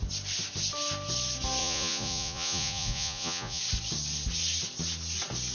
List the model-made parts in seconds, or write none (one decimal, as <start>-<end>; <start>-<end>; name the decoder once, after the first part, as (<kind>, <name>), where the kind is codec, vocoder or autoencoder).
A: 1.6-3.6 (vocoder, Vocos)